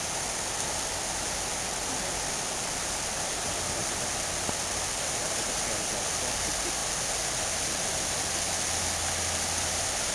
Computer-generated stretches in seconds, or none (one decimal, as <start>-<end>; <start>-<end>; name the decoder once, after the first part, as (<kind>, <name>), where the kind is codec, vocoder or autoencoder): none

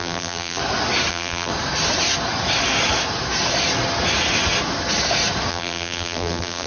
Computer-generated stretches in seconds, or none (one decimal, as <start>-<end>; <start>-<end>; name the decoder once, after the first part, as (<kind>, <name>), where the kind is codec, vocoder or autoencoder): 0.0-0.6 (vocoder, BigVGAN v2); 1.1-1.5; 5.5-6.7

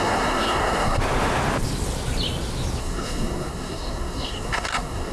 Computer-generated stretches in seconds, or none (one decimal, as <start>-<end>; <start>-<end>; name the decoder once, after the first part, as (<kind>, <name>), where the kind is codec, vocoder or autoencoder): 0.0-1.0 (codec, SNAC); 2.8-5.1

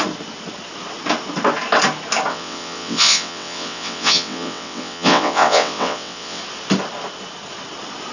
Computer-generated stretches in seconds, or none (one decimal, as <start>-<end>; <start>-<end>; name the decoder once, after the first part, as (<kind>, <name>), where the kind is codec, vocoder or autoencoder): 2.3-6.4 (vocoder, WaveNeXt)